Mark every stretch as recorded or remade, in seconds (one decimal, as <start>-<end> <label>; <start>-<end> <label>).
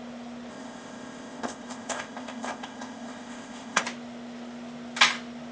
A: 0.0-0.5 recorded; 0.5-3.8 remade; 3.8-5.5 recorded